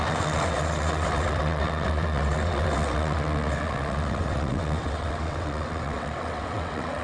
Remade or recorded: remade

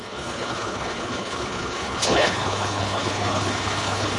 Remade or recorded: remade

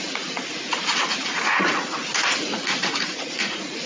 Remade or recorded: remade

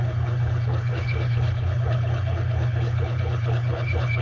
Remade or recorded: remade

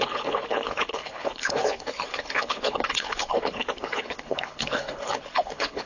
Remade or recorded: remade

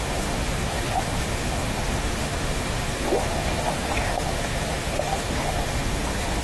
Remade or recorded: remade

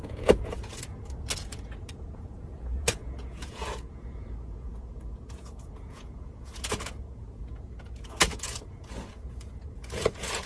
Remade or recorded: remade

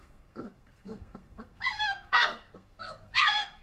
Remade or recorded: remade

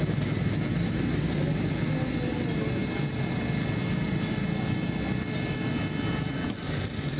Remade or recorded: recorded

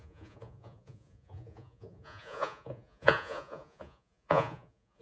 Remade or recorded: remade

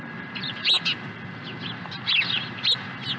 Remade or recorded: recorded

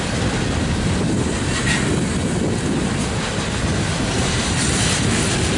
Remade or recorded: recorded